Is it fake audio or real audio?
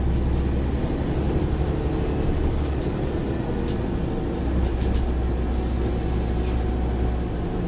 real